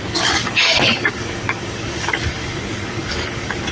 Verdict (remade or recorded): remade